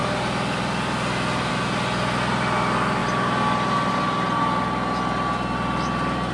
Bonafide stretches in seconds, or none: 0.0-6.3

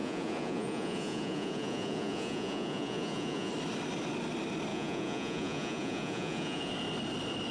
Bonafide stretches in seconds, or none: 3.5-4.7; 6.7-7.5

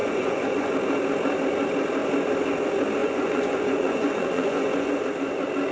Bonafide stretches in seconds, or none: 0.7-3.0; 5.0-5.7